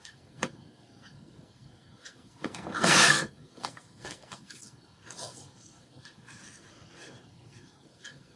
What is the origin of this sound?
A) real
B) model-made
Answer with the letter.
B